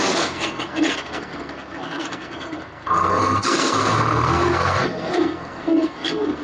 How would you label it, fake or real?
fake